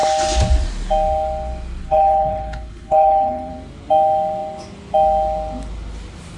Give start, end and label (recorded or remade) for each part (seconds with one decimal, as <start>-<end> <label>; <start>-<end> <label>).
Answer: 0.0-1.8 recorded; 1.8-3.5 remade; 3.5-6.4 recorded